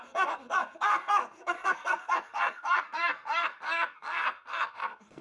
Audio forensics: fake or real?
fake